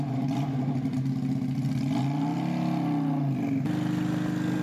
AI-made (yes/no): no